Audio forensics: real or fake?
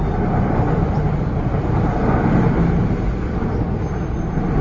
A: real